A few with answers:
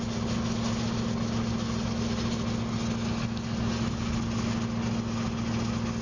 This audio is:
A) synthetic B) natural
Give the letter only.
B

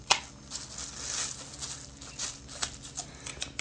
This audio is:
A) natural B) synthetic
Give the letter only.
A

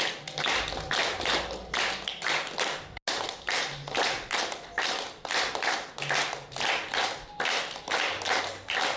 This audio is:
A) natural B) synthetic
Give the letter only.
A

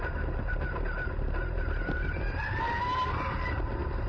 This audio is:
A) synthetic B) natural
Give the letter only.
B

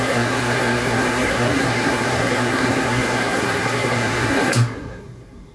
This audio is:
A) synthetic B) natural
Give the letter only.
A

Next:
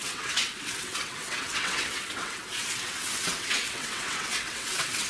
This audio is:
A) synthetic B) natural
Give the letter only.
A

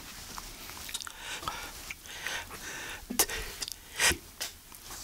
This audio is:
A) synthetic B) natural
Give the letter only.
B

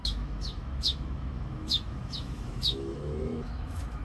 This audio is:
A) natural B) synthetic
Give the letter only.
B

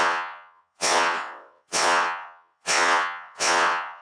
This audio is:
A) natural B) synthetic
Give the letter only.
B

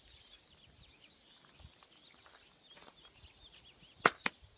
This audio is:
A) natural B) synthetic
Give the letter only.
A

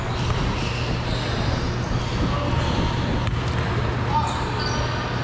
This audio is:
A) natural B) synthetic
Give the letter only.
A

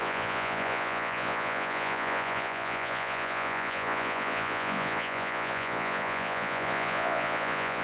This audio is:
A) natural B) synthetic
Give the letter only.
B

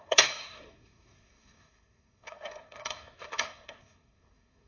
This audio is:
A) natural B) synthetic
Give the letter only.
B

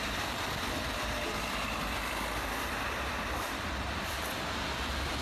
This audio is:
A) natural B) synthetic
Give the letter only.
B